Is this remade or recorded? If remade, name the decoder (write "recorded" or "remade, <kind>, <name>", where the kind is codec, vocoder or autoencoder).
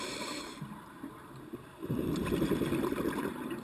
remade, vocoder, BigVGAN v2